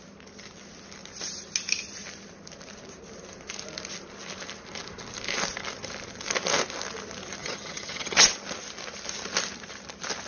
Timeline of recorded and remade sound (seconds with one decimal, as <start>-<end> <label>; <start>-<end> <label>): 0.0-7.4 recorded; 7.4-8.2 remade; 8.2-10.3 recorded